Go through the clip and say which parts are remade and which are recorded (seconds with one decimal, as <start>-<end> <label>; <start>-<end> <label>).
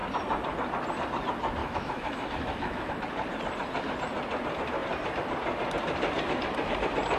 0.0-1.6 recorded; 1.6-2.9 remade; 2.9-7.2 recorded